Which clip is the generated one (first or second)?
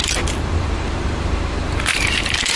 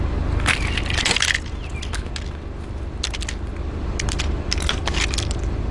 first